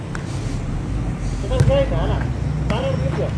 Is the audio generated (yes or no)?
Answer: no